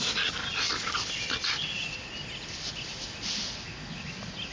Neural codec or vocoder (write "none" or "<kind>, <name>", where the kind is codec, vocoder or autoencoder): none